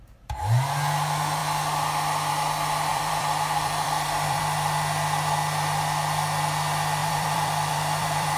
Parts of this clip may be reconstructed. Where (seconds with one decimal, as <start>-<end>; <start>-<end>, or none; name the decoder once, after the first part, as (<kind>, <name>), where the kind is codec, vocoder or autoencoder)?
2.9-4.4 (vocoder, BigVGAN v2); 7.0-8.4